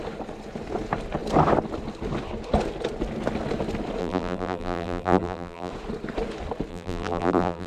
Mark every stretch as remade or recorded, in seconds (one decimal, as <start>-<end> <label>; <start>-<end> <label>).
0.0-4.0 recorded; 4.0-5.7 remade; 5.7-6.7 recorded; 6.7-7.7 remade